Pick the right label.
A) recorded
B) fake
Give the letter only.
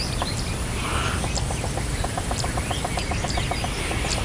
A